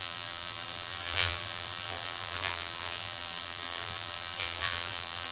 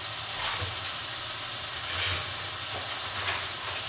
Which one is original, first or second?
second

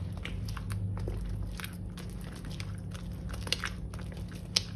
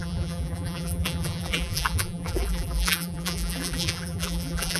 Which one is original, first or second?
first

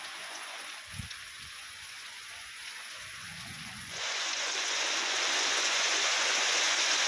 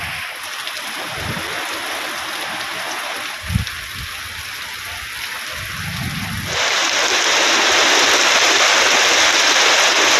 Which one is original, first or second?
second